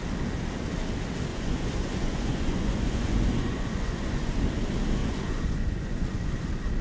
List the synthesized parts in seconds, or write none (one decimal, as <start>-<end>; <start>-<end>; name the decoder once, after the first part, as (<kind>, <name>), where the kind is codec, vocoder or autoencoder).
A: 1.3-4.4 (vocoder, Vocos); 5.0-6.3